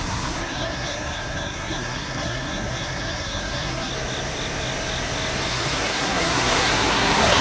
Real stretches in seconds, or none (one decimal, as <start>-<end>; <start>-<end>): 3.9-5.5